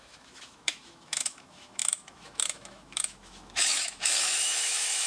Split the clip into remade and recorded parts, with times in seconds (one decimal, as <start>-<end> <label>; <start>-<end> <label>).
0.0-5.1 remade

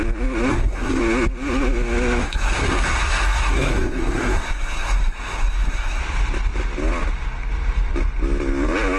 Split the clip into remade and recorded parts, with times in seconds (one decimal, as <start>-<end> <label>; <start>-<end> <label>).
0.0-0.5 recorded; 0.5-1.0 remade; 1.0-2.2 recorded; 2.2-6.0 remade; 6.0-9.0 recorded

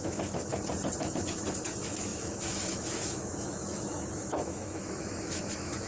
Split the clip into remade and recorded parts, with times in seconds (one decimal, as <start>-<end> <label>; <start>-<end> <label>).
0.0-0.5 remade; 0.5-1.0 recorded; 1.0-5.9 remade

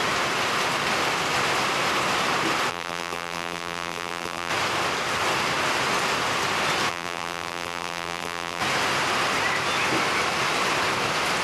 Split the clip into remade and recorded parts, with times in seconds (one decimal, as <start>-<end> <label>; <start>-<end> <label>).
0.0-2.7 recorded; 2.7-4.5 remade; 4.5-6.9 recorded; 6.9-8.6 remade; 8.6-11.4 recorded

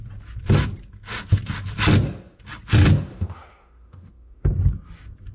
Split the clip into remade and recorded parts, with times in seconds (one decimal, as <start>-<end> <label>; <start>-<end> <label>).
0.0-3.1 recorded; 3.1-4.5 remade; 4.5-5.3 recorded

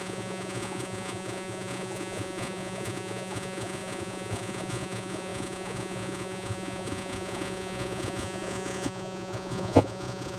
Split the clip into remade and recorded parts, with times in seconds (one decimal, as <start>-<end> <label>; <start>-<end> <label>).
0.0-10.4 remade

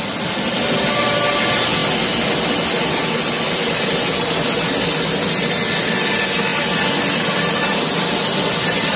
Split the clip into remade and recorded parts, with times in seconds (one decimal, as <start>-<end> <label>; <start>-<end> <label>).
0.0-9.0 recorded